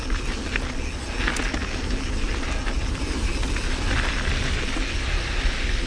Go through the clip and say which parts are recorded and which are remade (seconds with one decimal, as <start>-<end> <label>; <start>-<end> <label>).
0.0-5.9 recorded